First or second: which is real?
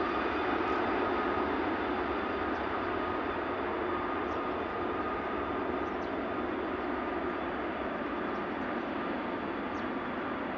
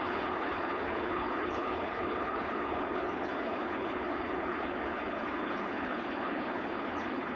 first